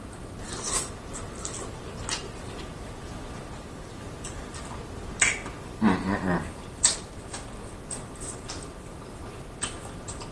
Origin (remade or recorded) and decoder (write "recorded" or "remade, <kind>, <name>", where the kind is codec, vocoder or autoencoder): recorded